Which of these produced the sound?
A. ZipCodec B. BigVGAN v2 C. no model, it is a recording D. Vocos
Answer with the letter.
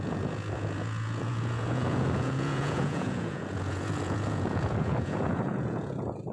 D